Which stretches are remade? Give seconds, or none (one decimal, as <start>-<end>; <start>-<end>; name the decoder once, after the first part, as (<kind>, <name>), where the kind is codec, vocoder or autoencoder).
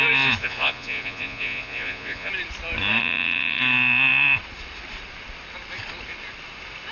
0.4-2.3 (vocoder, Vocos); 3.0-3.6